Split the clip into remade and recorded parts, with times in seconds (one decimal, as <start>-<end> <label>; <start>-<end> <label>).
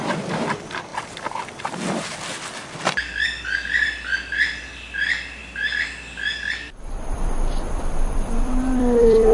0.0-5.4 remade; 5.4-6.8 recorded; 6.8-9.3 remade